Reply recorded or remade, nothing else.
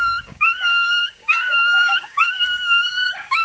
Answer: remade